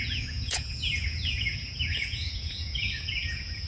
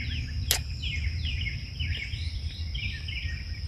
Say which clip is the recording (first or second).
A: second